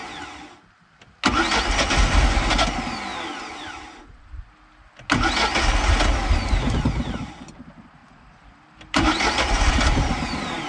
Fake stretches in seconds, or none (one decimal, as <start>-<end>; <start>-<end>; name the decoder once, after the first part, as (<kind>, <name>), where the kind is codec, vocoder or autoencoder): 3.1-4.0 (vocoder, BigVGAN v2); 8.0-9.7